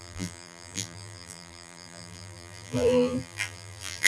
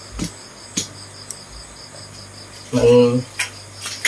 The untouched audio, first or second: second